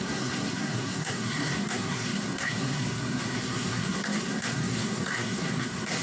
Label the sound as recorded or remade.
remade